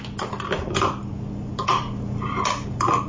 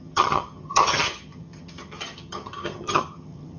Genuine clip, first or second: first